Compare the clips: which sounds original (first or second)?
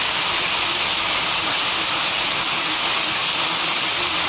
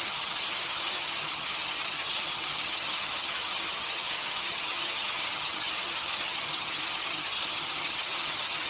first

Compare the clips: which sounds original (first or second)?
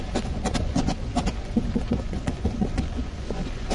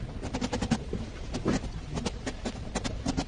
second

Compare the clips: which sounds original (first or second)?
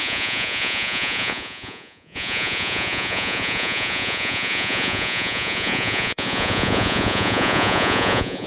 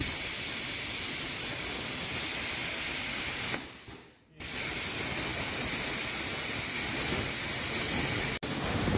second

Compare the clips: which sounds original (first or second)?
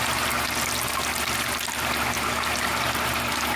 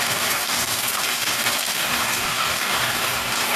first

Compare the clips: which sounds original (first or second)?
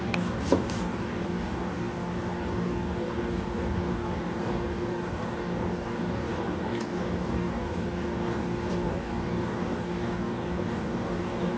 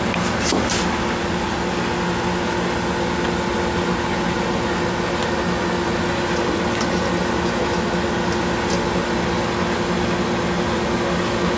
second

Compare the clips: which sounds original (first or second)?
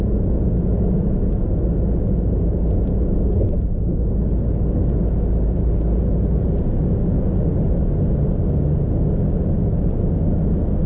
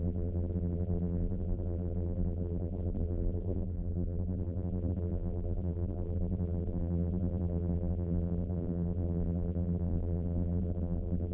first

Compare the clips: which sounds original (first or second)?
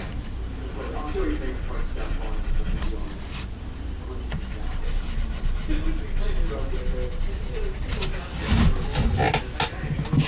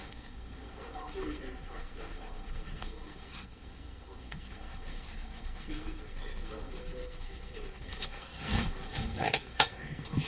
first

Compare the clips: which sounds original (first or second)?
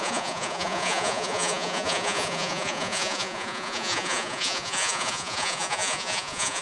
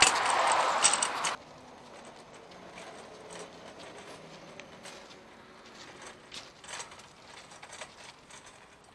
second